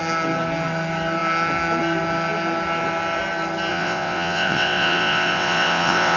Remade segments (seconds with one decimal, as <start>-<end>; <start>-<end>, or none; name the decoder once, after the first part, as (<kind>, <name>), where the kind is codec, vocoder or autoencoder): 3.7-6.2 (vocoder, WaveNeXt)